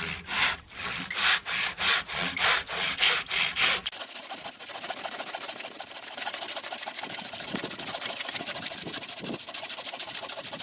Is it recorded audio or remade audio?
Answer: recorded